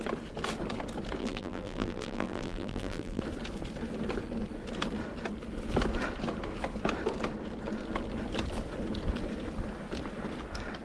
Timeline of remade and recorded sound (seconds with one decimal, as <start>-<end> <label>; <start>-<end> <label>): 0.0-1.2 recorded; 1.2-3.2 remade; 3.2-10.8 recorded